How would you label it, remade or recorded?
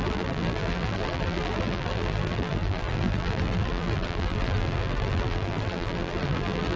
remade